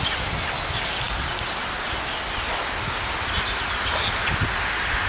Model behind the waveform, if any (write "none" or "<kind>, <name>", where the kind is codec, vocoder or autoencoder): none